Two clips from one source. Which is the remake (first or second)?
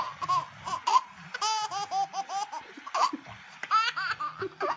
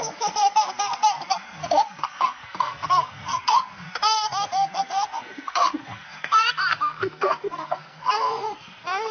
second